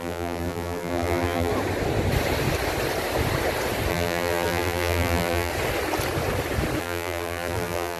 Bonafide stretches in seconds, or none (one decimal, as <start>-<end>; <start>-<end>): 1.5-3.9; 5.5-6.8